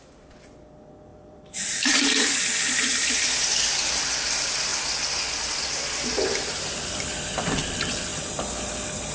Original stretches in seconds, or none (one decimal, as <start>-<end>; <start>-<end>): 0.0-1.1; 2.4-2.9; 3.4-4.7; 5.8-8.1; 8.7-9.1